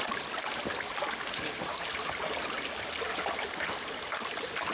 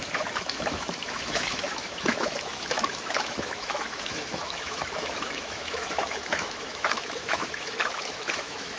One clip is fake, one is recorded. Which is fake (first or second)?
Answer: second